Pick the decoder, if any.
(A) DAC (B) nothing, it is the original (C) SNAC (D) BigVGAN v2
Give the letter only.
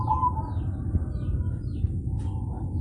B